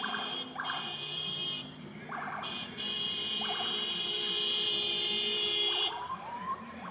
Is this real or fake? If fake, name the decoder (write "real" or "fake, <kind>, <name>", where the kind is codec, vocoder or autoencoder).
fake, vocoder, BigVGAN v2